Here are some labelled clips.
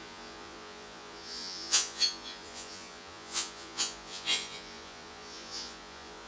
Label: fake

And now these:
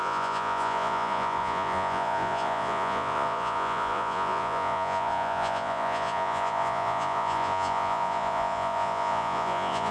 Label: fake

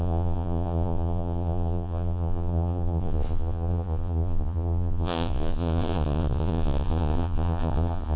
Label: fake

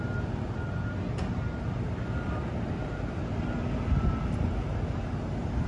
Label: real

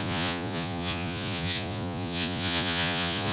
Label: fake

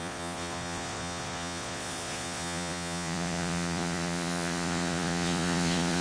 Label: fake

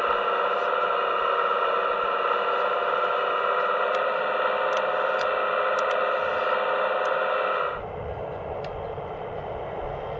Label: real